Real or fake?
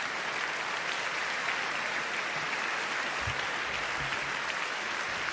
real